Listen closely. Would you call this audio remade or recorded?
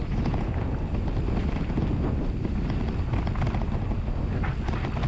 recorded